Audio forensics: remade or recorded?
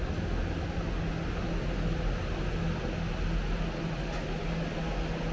recorded